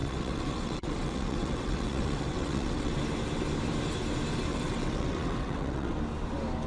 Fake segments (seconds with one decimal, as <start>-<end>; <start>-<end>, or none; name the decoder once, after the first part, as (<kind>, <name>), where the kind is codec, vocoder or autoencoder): 0.0-3.0 (vocoder, WaveNeXt); 4.5-6.0